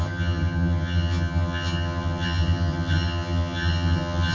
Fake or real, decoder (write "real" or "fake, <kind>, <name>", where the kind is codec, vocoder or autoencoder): fake, vocoder, HiFi-GAN